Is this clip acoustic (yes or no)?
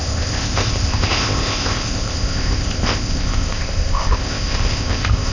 no